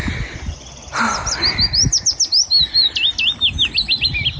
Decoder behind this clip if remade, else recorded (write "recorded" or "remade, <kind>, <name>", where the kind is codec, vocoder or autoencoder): recorded